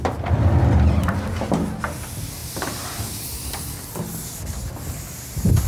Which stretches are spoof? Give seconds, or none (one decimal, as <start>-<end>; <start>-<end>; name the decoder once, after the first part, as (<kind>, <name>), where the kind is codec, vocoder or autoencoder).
2.4-3.3 (vocoder, BigVGAN v2)